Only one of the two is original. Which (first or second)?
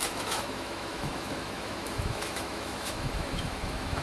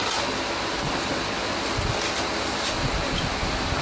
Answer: second